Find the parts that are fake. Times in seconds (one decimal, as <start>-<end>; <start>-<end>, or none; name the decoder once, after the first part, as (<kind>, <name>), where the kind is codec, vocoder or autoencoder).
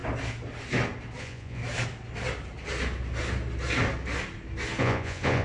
1.2-1.6 (vocoder, Vocos); 4.8-5.4